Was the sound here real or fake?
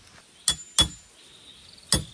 real